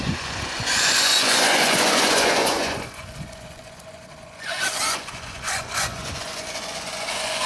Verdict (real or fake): fake